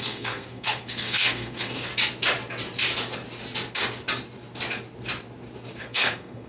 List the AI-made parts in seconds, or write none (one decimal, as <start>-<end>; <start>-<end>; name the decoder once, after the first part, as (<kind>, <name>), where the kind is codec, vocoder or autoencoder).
0.0-1.9 (codec, SNAC); 5.8-6.5